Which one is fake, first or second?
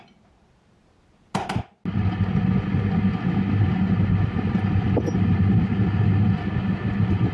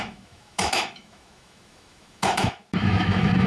second